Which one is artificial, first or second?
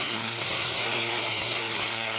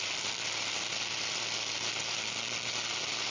first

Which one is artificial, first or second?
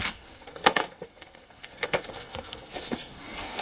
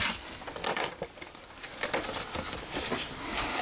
first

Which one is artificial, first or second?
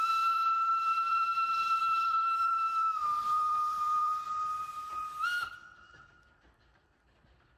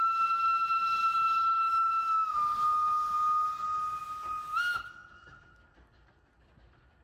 first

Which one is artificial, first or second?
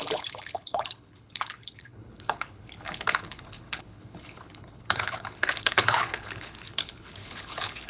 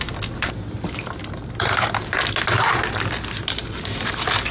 first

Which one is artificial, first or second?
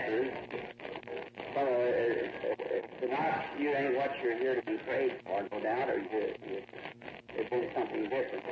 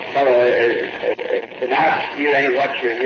second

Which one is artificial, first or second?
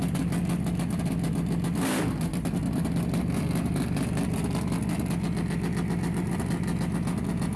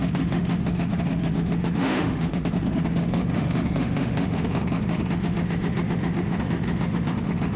second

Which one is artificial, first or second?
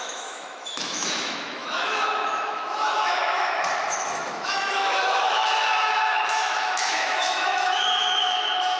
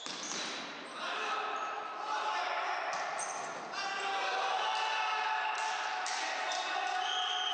first